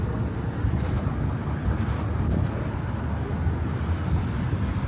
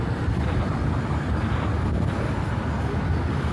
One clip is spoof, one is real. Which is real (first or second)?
first